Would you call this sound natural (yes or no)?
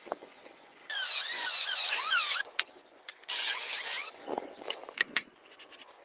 no